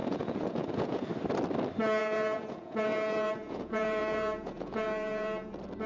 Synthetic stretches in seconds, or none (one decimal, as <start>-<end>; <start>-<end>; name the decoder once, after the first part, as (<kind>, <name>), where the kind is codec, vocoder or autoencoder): 0.0-1.1 (vocoder, Vocos); 2.0-5.5

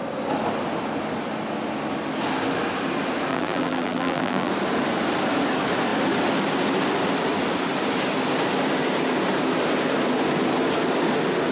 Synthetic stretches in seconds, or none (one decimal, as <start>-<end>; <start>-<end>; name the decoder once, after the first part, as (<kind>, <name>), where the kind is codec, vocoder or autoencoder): 3.3-4.5 (vocoder, BigVGAN v2)

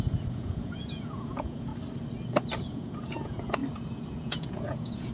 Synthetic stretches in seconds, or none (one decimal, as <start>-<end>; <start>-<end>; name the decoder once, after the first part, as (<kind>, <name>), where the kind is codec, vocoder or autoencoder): 0.0-1.7 (vocoder, Vocos); 2.6-3.6; 4.2-5.1

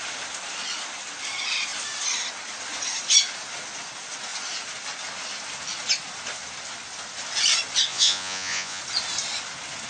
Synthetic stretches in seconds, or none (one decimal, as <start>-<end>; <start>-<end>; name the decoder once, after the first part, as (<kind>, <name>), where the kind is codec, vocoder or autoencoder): 7.9-8.8 (vocoder, Vocos)

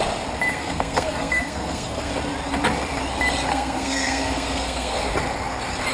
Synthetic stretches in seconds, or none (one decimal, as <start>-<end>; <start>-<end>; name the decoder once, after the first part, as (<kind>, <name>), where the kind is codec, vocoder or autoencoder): 0.5-2.1 (codec, SNAC); 3.5-5.1

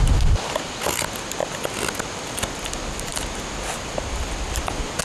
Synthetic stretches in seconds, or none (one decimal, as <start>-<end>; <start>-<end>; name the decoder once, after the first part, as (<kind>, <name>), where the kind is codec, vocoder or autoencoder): none

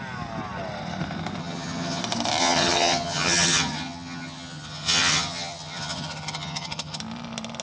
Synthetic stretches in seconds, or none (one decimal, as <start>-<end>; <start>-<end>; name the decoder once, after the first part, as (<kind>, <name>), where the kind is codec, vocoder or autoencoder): 1.4-2.0 (vocoder, HiFi-GAN); 2.4-7.0

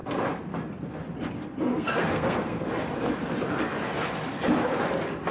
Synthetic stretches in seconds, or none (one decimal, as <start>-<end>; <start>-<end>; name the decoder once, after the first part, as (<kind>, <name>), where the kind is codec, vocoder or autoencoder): 1.7-2.6 (codec, SNAC)